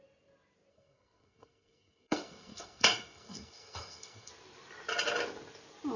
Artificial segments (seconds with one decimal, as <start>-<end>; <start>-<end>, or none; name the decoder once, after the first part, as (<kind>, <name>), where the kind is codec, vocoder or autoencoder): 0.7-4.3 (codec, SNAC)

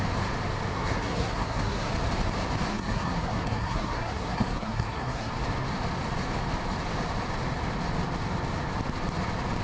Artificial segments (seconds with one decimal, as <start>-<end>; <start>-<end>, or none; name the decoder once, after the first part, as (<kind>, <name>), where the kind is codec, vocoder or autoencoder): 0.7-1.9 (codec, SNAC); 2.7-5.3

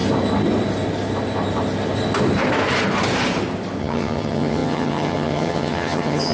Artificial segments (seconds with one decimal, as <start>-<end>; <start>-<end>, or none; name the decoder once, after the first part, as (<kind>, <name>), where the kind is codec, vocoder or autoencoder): 3.8-6.3 (vocoder, HiFi-GAN)

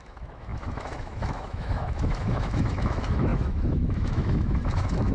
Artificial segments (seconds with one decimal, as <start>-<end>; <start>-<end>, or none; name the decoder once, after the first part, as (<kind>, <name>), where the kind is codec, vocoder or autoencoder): 0.0-5.1 (autoencoder, DAC-VAE)

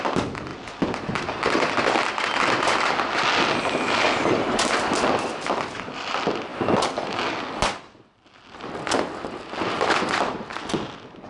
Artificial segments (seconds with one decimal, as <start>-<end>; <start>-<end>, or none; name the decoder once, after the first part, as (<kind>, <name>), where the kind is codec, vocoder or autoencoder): none